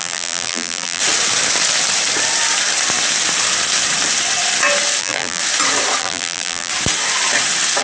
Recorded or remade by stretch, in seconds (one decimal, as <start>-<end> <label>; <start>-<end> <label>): 0.0-1.0 remade; 1.0-5.0 recorded; 5.0-5.4 remade; 5.4-6.0 recorded; 6.0-6.7 remade; 6.7-7.8 recorded